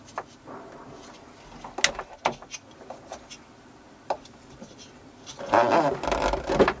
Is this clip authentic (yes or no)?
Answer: yes